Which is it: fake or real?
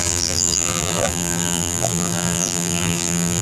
fake